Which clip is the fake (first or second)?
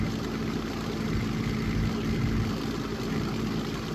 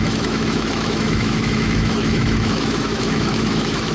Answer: second